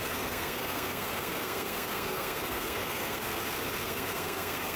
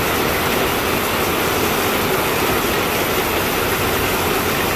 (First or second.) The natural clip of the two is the second